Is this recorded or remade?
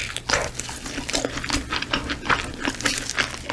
recorded